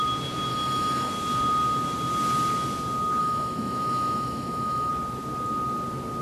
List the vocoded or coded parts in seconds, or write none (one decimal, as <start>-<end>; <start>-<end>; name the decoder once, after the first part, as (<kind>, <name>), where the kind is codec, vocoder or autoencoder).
0.5-1.1 (autoencoder, DAC-VAE); 3.2-4.9